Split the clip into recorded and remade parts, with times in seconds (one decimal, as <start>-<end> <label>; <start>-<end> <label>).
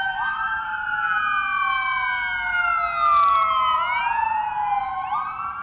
0.0-5.6 recorded